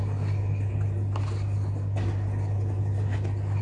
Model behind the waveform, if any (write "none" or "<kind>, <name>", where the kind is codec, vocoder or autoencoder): none